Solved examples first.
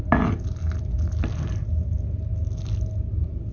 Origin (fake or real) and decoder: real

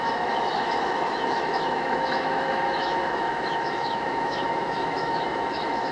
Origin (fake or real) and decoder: fake, autoencoder, DAC-VAE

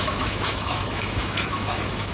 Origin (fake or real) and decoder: fake, autoencoder, DAC-VAE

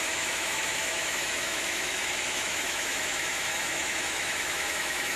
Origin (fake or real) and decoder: fake, autoencoder, DAC-VAE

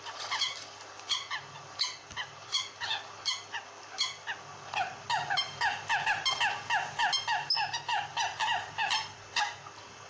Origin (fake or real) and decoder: real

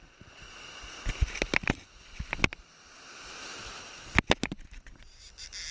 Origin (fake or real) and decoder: real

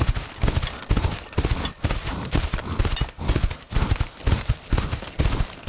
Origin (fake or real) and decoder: real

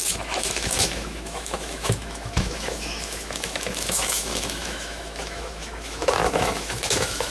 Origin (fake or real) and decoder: fake, autoencoder, DAC-VAE